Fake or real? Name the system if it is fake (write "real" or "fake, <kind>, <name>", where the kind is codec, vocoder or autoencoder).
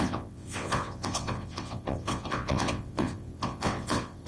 fake, vocoder, WaveNeXt